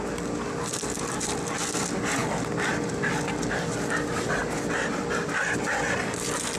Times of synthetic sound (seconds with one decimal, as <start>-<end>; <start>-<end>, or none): none